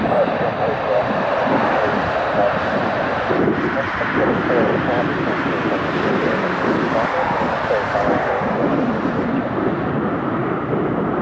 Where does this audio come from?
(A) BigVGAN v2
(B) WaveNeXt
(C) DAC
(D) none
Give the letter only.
D